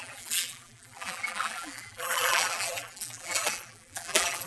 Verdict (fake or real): fake